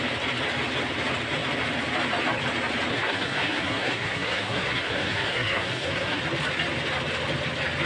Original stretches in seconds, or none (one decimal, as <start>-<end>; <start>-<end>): 0.0-2.9; 6.2-7.9